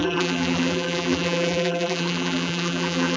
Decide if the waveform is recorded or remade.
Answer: remade